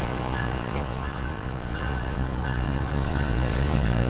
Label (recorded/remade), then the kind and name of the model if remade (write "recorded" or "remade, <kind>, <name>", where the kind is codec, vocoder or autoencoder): remade, vocoder, Vocos